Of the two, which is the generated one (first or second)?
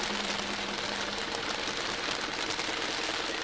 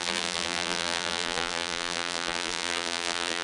second